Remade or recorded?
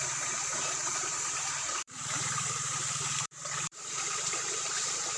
remade